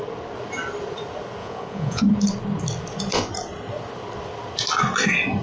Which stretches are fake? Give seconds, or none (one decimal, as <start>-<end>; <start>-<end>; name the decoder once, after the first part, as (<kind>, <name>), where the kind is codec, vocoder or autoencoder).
1.4-2.0 (vocoder, Vocos)